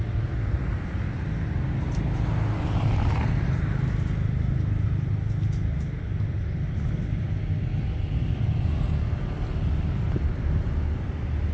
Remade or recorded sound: recorded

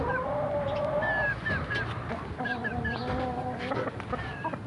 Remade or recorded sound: recorded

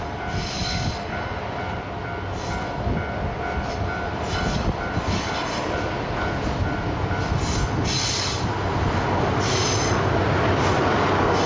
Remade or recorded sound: recorded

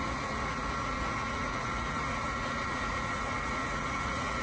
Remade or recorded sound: remade